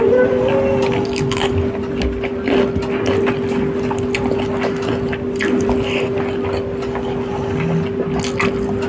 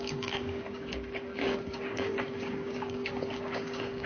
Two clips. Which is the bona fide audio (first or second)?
first